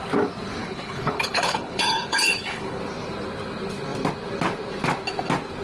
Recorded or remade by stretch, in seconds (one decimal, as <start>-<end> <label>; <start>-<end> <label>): 0.0-0.6 recorded; 0.6-2.8 remade; 2.8-5.6 recorded

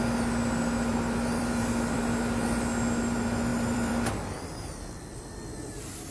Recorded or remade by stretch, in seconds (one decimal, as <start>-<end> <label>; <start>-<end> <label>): 0.0-0.9 recorded; 0.9-2.0 remade; 2.0-3.5 recorded; 3.5-6.1 remade

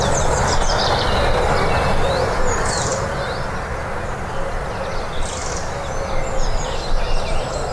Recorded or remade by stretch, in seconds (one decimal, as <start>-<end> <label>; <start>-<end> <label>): 0.0-7.7 recorded

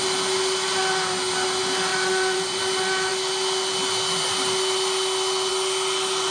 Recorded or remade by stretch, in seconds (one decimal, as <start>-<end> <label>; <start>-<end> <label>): 0.0-1.9 recorded; 1.9-2.6 remade; 2.6-6.3 recorded

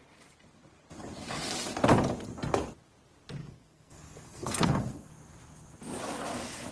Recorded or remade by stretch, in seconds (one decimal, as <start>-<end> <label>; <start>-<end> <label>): 0.0-3.4 recorded; 3.4-5.1 remade; 5.1-6.7 recorded